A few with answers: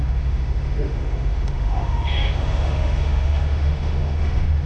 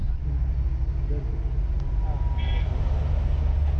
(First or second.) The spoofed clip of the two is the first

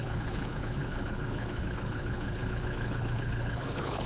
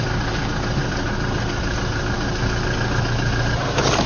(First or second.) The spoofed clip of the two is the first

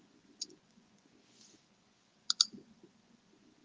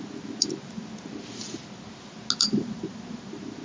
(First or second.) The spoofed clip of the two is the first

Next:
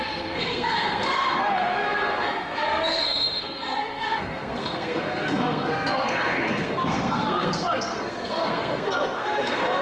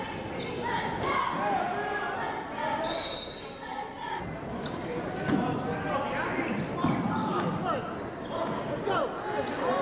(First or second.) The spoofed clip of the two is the first